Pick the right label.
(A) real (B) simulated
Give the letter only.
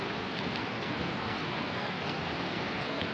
B